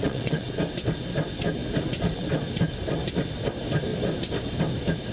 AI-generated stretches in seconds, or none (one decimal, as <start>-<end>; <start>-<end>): 0.0-0.5